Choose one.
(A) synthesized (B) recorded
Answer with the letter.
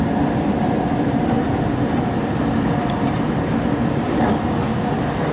A